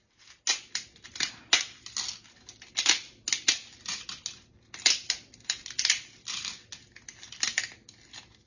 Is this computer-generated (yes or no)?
no